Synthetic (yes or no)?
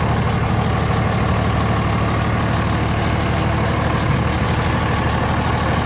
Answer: no